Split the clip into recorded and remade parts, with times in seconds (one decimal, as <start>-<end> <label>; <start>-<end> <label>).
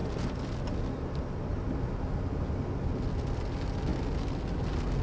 0.0-5.0 recorded